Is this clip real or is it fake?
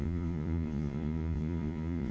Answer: fake